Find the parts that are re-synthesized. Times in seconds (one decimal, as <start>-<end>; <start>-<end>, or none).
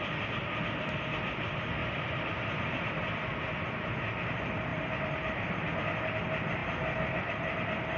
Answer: 1.8-2.9; 4.7-5.6